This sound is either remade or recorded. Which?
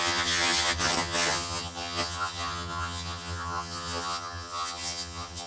remade